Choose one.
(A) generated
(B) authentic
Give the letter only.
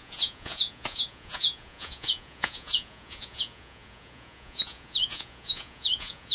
A